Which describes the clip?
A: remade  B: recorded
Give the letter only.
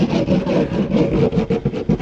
B